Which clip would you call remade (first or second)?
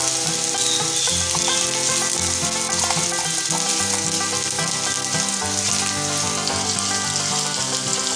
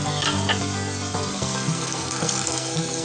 second